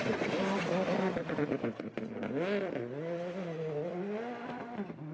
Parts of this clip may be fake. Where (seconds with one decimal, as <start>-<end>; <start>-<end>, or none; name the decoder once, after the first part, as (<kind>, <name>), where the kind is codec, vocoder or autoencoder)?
1.2-1.9 (vocoder, Vocos)